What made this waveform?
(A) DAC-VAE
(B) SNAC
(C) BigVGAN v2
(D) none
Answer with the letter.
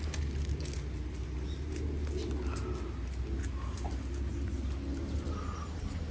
D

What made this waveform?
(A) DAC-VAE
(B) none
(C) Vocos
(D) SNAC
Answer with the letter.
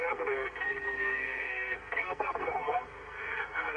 D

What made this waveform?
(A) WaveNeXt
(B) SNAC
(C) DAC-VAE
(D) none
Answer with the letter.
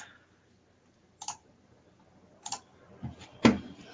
D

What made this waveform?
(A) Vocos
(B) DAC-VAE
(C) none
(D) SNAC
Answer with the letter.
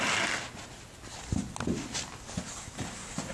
C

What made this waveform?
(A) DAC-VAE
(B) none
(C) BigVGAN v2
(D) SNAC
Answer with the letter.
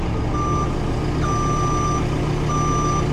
B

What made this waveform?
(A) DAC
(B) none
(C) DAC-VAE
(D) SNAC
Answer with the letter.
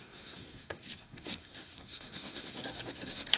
D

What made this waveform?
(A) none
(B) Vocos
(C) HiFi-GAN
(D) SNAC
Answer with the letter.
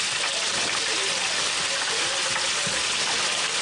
A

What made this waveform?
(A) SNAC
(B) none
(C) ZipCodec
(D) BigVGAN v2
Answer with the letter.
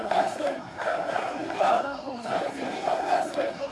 A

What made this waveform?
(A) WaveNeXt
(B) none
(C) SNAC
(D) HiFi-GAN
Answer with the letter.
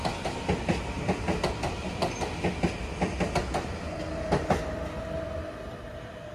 B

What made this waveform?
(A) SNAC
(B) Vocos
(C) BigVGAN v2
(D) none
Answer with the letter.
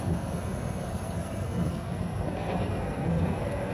A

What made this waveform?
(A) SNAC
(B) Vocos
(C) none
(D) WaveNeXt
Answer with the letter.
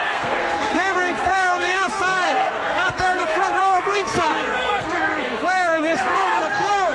A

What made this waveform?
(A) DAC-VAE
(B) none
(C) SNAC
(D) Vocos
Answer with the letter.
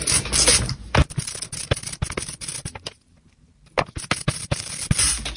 B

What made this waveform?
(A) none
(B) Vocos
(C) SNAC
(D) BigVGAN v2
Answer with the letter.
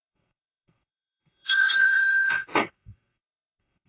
C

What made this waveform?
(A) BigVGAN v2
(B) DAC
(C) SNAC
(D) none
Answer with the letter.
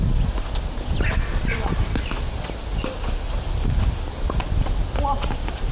D